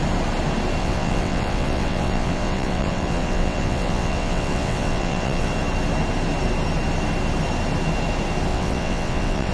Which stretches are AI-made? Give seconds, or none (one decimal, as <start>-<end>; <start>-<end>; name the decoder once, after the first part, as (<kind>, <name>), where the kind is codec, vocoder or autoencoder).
0.8-5.5 (vocoder, WaveNeXt); 8.5-9.5